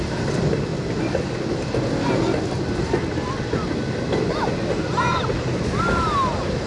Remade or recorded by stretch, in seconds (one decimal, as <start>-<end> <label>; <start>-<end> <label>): 0.0-6.7 recorded